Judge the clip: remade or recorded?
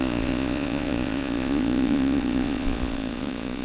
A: remade